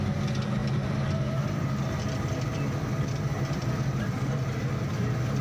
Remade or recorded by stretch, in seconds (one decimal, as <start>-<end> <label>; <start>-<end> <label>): 0.0-3.6 recorded; 3.6-5.4 remade